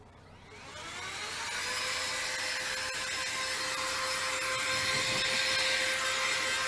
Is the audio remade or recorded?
recorded